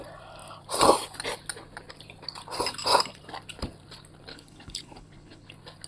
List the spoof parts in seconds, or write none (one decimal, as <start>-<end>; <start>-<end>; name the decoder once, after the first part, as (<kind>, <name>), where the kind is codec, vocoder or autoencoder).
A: 4.3-5.5 (codec, HILCodec)